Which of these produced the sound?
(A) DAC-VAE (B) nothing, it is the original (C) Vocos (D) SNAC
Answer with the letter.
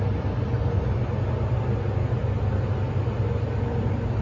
B